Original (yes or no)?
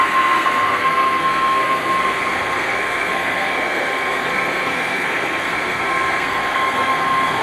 no